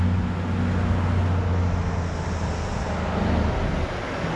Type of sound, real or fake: real